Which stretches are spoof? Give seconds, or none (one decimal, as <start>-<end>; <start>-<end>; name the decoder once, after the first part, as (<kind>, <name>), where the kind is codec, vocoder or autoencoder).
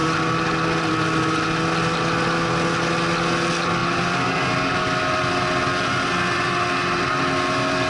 none